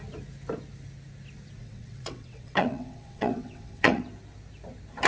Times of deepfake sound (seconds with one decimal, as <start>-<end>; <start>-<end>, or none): 1.6-4.0